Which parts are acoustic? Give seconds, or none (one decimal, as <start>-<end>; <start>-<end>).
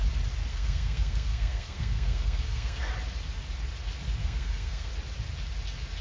0.0-0.5; 2.9-4.2; 4.9-6.0